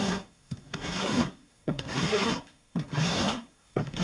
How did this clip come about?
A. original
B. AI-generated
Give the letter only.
B